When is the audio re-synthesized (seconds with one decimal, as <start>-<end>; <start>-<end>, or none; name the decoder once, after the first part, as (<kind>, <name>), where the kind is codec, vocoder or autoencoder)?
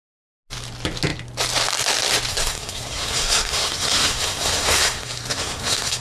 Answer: 2.3-6.0 (codec, SNAC)